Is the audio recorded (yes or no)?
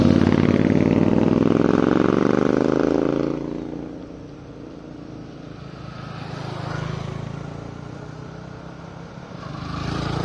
yes